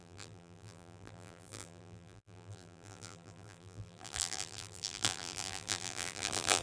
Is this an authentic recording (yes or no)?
no